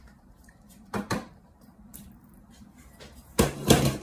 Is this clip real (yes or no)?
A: no